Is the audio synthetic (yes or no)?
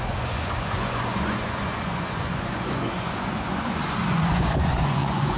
yes